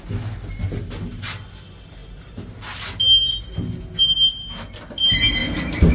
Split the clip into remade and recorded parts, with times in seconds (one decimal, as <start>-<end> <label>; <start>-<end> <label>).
0.0-5.9 recorded